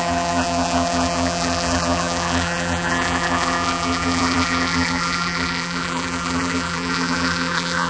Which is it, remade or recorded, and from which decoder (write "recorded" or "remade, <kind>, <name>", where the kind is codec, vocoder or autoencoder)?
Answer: remade, vocoder, BigVGAN v2